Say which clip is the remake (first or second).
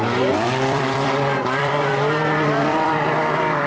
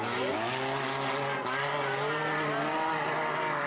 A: first